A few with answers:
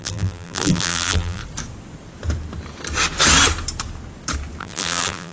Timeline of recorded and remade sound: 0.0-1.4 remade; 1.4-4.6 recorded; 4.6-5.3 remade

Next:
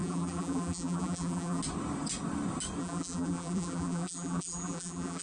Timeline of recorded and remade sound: 0.0-1.6 remade; 1.6-2.8 recorded; 2.8-5.2 remade

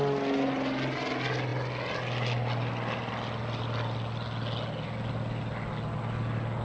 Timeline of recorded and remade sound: 0.0-6.6 recorded

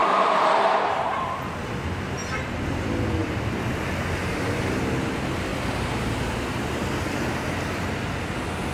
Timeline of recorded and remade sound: 0.0-0.9 remade; 0.9-3.2 recorded; 3.2-3.9 remade; 3.9-8.7 recorded

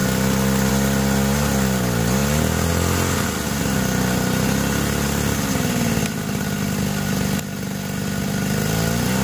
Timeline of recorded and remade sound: 0.0-9.2 recorded

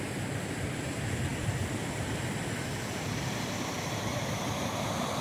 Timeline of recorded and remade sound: 0.0-5.2 remade

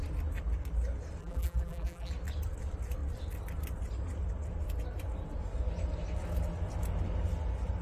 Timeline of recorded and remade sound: 0.0-1.2 recorded; 1.2-2.1 remade; 2.1-7.8 recorded